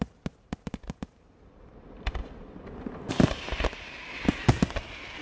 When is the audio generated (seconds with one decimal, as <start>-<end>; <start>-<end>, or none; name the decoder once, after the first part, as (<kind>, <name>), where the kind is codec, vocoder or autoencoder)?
none